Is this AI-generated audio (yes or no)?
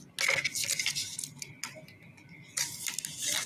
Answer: no